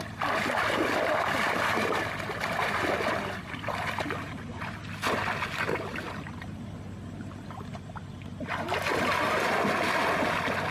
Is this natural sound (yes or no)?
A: yes